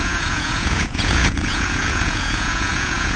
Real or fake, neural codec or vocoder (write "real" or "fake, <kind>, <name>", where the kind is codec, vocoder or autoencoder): fake, vocoder, Vocos